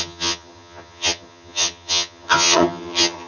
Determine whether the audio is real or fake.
fake